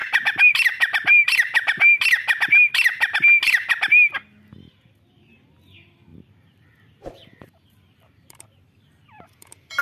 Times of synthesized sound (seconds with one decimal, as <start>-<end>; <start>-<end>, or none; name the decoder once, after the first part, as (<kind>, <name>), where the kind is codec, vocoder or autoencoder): 0.0-0.5 (vocoder, BigVGAN v2); 6.1-9.8